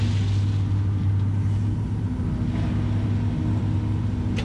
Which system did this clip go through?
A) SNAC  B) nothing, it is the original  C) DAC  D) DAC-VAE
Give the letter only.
B